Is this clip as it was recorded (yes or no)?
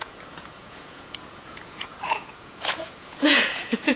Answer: no